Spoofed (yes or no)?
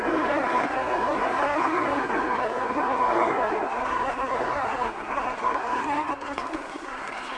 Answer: yes